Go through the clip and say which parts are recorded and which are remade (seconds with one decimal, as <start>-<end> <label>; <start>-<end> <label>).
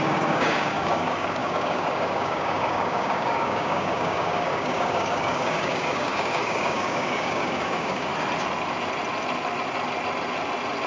0.0-8.1 remade; 8.1-10.9 recorded